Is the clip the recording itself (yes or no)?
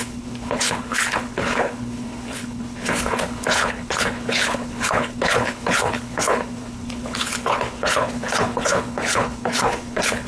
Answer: no